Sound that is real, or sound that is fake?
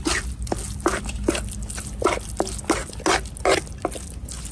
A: real